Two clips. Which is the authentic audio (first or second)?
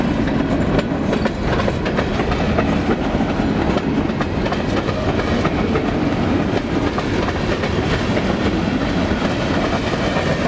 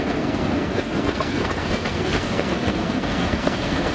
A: first